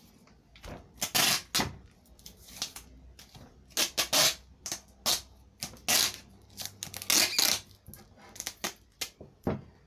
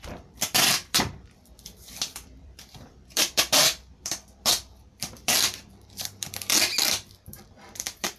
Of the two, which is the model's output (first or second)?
second